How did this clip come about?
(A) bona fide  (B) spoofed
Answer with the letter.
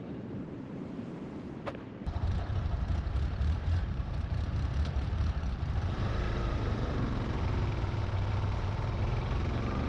B